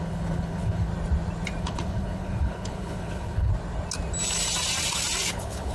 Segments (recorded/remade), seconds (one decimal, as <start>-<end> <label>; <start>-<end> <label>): 0.0-0.9 remade; 0.9-1.6 recorded; 1.6-3.5 remade; 3.5-5.3 recorded; 5.3-5.7 remade